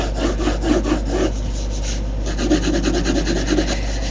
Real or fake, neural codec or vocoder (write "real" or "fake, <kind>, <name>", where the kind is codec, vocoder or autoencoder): real